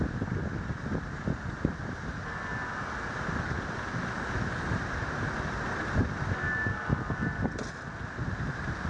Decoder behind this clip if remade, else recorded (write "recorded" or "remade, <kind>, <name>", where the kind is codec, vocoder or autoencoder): recorded